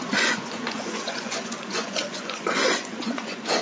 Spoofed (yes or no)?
yes